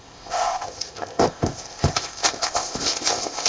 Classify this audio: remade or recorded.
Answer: remade